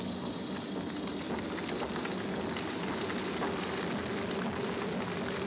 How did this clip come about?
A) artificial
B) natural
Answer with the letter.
B